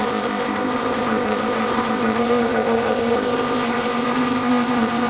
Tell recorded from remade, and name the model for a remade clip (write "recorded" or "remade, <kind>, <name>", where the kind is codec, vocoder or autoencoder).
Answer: remade, codec, ZipCodec